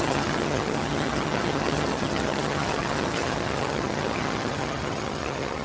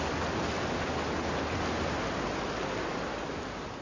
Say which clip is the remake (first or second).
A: first